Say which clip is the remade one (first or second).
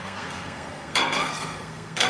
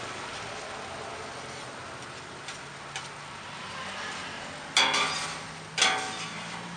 first